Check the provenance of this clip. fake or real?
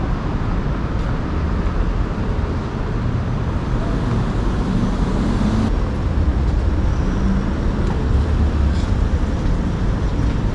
real